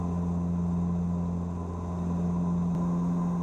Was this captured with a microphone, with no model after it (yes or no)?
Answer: yes